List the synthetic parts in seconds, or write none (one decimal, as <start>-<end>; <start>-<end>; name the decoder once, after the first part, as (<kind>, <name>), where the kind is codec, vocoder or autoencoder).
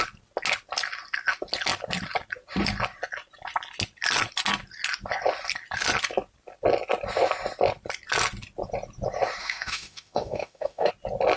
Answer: 9.4-10.9 (autoencoder, DAC-VAE)